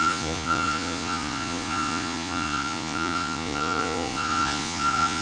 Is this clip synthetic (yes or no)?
yes